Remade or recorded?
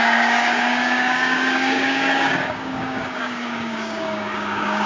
remade